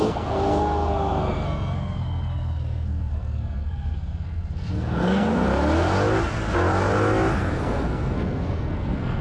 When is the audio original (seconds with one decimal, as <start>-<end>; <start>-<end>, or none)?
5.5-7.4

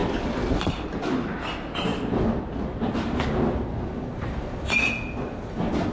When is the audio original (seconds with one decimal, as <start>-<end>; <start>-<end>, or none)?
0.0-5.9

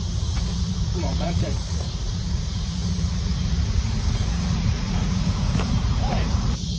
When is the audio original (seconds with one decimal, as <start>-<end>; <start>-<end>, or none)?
none